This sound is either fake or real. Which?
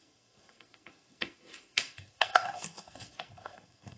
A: fake